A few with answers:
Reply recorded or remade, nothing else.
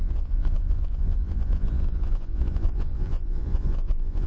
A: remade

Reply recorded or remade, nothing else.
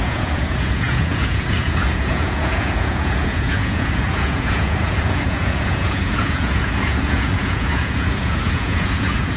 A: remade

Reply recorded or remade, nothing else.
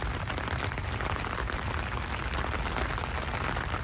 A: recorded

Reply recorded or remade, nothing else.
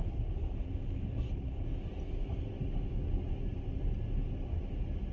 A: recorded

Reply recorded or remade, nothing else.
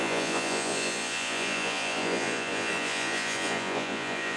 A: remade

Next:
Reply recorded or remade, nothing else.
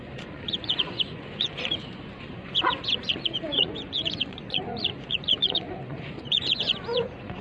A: remade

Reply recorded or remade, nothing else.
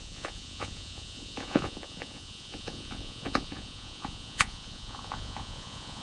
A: remade